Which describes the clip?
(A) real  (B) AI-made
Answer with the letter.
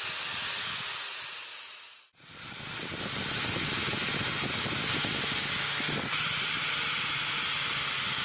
A